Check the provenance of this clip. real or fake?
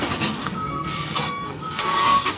fake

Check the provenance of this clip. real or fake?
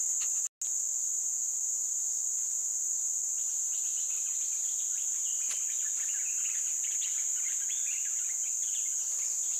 real